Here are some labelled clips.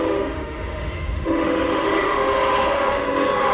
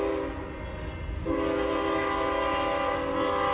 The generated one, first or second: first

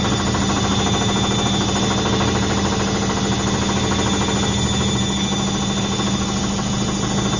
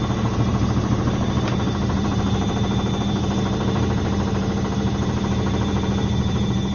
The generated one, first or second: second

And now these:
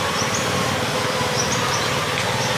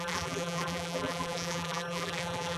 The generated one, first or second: second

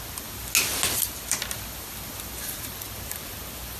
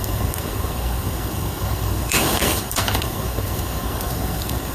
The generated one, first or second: second